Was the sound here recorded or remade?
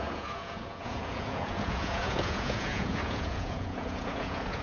remade